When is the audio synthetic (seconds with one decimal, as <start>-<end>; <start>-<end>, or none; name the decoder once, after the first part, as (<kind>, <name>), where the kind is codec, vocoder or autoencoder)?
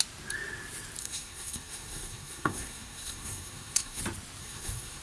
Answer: 1.0-4.0 (codec, SNAC); 4.4-5.0